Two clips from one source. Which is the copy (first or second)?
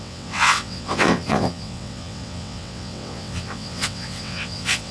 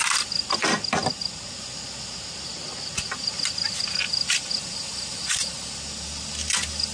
first